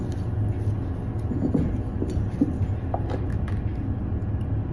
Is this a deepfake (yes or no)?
no